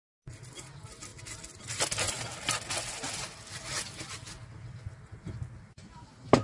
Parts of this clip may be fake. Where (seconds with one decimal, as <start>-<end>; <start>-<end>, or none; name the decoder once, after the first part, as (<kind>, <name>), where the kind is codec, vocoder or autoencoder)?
none